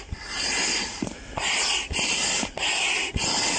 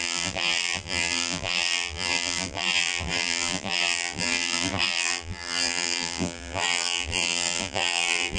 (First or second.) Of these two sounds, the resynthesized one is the second